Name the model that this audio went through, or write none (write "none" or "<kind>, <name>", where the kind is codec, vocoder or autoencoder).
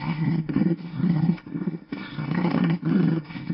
codec, SNAC